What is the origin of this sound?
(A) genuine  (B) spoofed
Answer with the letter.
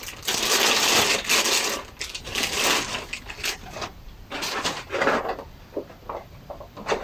A